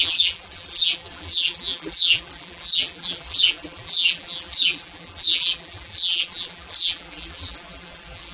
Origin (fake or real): fake